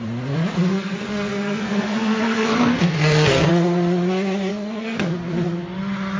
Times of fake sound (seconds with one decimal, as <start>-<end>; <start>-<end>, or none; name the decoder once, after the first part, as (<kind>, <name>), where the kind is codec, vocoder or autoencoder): 0.7-3.5 (codec, SNAC); 4.5-5.1